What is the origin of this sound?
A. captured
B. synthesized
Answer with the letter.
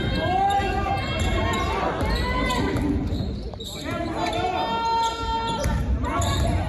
A